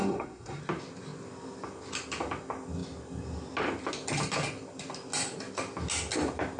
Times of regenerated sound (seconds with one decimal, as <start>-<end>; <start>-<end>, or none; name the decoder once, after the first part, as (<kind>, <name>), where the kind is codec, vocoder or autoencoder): 0.0-0.6 (codec, SNAC)